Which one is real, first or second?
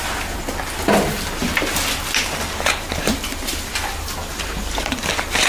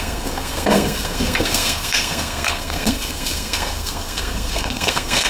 first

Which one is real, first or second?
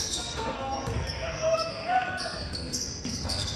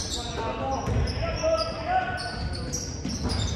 second